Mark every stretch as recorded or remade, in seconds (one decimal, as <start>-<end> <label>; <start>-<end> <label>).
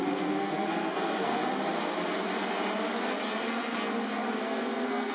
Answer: 0.0-1.4 remade; 1.4-4.4 recorded; 4.4-5.1 remade